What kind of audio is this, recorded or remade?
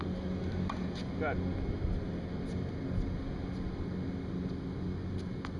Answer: recorded